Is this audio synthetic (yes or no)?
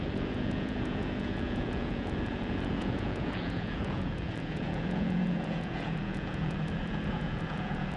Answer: yes